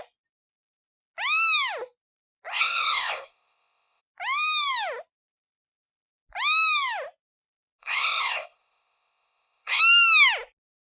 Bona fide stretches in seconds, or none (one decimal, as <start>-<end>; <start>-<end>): 0.0-2.5; 4.0-7.8; 9.8-10.8